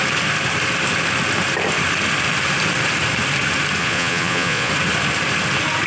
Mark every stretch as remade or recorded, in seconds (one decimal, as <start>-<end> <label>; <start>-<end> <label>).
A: 0.0-3.8 recorded; 3.8-4.7 remade; 4.7-5.9 recorded